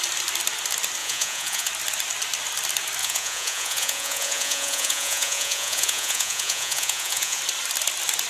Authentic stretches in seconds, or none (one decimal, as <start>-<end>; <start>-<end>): 0.0-1.0; 1.7-3.0; 7.4-8.3